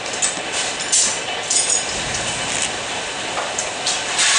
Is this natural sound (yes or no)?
yes